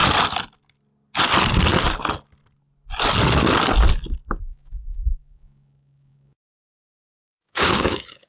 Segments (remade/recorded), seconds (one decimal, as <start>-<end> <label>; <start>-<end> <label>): 0.0-4.4 recorded; 4.4-8.3 remade